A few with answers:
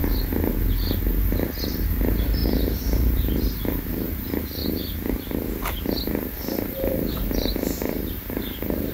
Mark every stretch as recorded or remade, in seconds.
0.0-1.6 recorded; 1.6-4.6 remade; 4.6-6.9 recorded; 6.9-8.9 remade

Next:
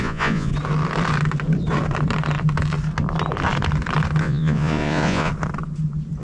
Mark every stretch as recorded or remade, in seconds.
0.0-0.5 remade; 0.5-4.2 recorded; 4.2-5.3 remade; 5.3-6.2 recorded

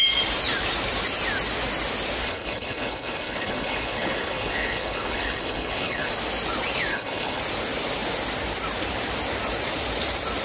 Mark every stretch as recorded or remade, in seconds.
0.0-2.2 recorded; 2.2-6.1 remade; 6.1-6.9 recorded; 6.9-7.4 remade; 7.4-10.4 recorded

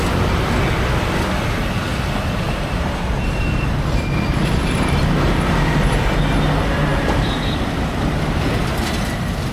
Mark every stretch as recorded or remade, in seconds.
0.0-1.9 recorded; 1.9-5.9 remade; 5.9-6.9 recorded; 6.9-7.6 remade; 7.6-9.5 recorded

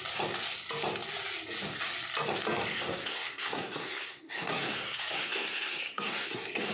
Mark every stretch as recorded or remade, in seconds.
0.0-2.7 recorded; 2.7-6.7 remade

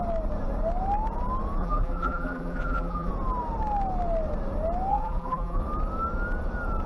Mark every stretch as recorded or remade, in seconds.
0.0-1.6 recorded; 1.6-3.1 remade; 3.1-4.9 recorded; 4.9-5.6 remade; 5.6-6.9 recorded

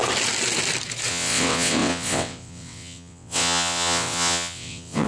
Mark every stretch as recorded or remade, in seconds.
0.0-1.1 recorded; 1.1-5.1 remade